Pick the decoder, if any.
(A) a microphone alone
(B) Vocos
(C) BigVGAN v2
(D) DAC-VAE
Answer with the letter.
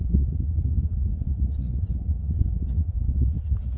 B